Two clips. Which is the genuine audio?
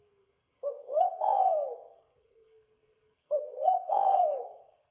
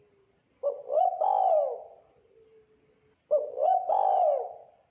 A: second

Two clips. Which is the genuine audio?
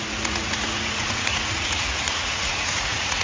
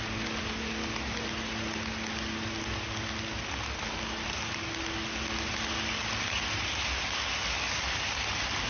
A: second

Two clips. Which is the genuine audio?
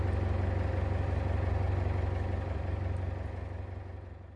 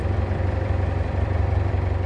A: first